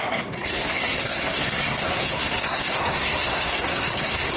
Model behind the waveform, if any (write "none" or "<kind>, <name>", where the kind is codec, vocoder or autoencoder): codec, SNAC